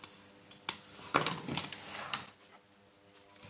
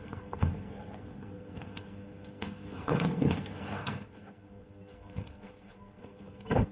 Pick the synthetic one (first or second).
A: second